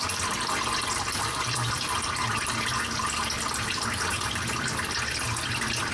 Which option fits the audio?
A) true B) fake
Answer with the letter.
B